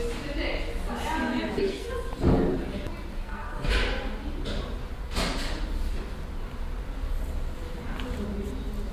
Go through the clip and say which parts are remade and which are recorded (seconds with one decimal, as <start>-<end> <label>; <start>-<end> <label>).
0.0-1.2 recorded; 1.2-1.9 remade; 1.9-3.1 recorded; 3.1-3.7 remade; 3.7-8.9 recorded